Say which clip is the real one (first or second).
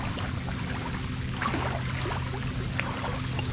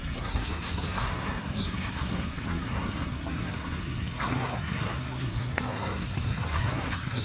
first